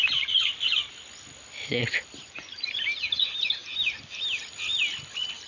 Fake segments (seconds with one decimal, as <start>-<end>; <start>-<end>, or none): none